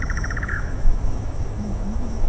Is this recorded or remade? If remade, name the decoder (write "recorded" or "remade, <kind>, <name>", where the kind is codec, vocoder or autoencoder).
remade, autoencoder, DAC-VAE